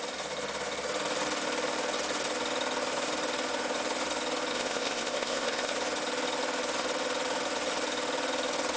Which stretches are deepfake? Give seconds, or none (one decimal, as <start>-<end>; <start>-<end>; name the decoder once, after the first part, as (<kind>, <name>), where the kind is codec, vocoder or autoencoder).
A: 4.5-5.7 (codec, ZipCodec)